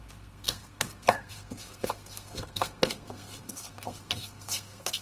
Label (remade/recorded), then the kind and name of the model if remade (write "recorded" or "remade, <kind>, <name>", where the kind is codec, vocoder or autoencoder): remade, codec, SNAC